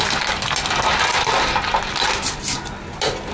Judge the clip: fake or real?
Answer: real